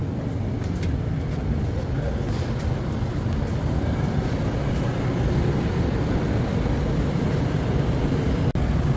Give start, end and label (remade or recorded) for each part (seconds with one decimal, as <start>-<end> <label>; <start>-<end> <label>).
0.0-9.0 recorded